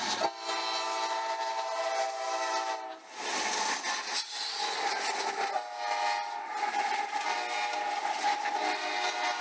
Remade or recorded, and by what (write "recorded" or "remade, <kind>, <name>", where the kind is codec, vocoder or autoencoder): recorded